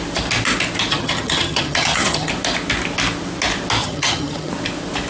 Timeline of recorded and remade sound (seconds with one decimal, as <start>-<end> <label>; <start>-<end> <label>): 0.0-0.9 recorded; 0.9-2.3 remade; 2.3-3.8 recorded; 3.8-4.5 remade; 4.5-5.1 recorded